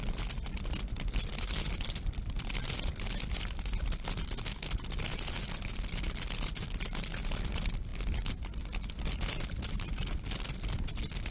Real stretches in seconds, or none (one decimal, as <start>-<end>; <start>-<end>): 0.0-11.3